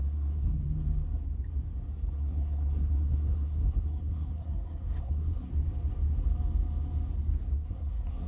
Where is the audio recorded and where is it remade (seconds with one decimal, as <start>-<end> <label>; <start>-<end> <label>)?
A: 0.0-0.6 remade; 0.6-2.2 recorded; 2.2-5.5 remade; 5.5-7.4 recorded; 7.4-8.3 remade